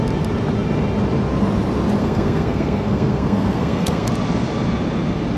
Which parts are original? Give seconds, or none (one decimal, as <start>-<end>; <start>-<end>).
0.0-2.0; 4.1-5.4